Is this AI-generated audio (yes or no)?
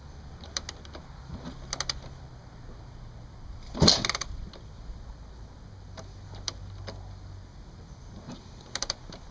no